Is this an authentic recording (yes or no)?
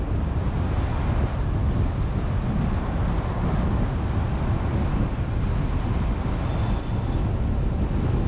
yes